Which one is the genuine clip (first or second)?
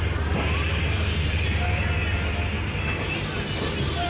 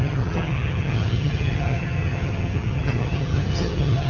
first